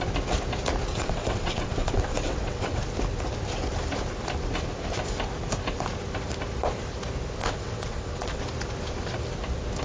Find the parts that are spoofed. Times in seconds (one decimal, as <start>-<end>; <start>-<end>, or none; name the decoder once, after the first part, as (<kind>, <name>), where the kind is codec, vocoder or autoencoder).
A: 0.9-2.8 (vocoder, WaveNeXt); 7.4-8.4